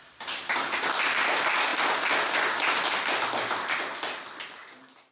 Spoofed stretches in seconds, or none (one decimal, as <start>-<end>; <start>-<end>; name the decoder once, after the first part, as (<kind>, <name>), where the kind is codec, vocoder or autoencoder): none